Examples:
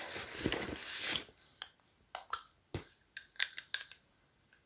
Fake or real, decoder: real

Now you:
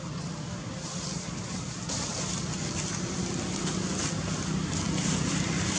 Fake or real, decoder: real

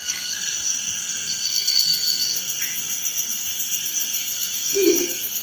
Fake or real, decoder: fake, codec, SNAC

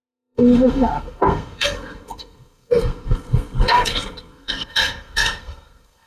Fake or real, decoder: fake, codec, SNAC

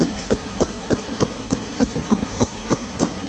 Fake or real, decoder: fake, codec, SNAC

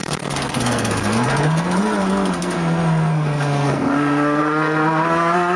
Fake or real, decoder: fake, codec, SNAC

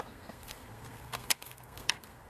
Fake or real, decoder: fake, codec, SNAC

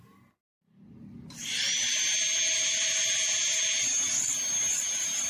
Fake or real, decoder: real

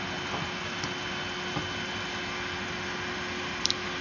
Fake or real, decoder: real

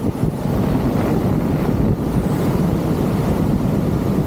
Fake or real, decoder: real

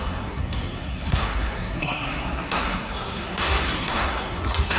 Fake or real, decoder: fake, codec, SNAC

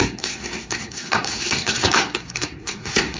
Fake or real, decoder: fake, codec, SNAC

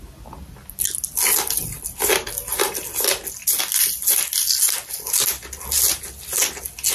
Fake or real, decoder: real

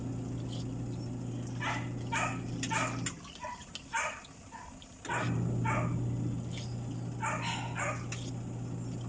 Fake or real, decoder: real